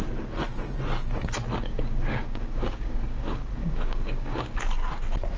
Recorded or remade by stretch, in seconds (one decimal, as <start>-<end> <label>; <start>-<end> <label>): 0.0-1.7 recorded; 1.7-4.6 remade; 4.6-5.4 recorded